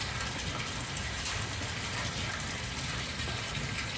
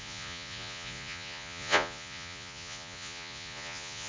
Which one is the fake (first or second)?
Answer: second